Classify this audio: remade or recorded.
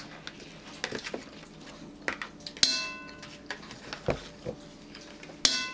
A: recorded